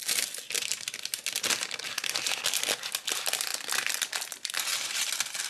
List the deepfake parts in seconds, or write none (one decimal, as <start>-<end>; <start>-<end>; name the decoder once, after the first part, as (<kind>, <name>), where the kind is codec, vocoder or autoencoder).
none

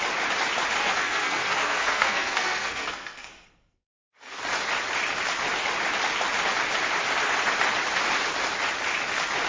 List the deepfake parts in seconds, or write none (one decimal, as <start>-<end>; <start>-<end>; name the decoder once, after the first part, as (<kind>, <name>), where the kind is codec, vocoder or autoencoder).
0.8-4.4 (codec, SNAC)

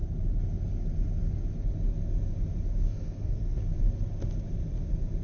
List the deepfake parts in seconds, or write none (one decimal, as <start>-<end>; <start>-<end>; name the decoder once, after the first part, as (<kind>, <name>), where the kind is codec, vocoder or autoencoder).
2.9-3.6 (codec, SNAC)

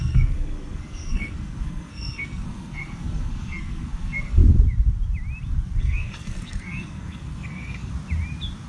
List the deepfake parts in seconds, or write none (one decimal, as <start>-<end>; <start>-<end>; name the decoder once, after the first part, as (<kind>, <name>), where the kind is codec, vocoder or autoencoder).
0.0-4.4 (codec, SNAC); 5.8-7.9

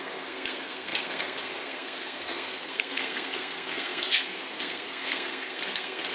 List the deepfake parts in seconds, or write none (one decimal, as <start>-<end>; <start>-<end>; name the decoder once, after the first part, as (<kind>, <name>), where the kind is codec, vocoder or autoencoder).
0.0-6.1 (codec, SNAC)

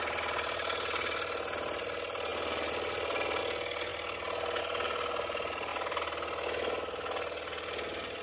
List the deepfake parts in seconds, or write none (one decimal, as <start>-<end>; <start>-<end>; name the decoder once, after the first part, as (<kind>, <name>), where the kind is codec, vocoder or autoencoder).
none